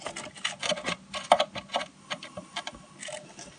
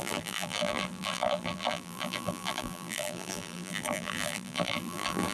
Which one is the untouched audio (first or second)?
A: first